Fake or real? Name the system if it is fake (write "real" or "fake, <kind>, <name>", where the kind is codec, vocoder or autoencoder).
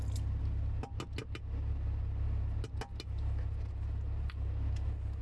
real